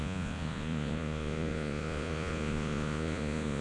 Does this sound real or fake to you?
fake